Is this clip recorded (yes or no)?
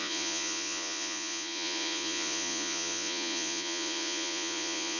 no